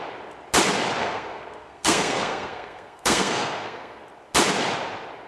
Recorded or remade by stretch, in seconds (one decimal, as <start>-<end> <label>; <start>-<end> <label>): 0.0-1.0 recorded; 1.0-4.0 remade; 4.0-5.3 recorded